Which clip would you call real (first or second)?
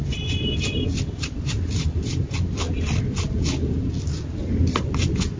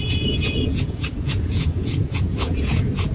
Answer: first